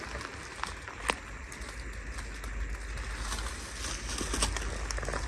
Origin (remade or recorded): recorded